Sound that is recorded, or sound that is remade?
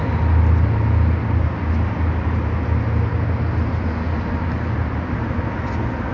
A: recorded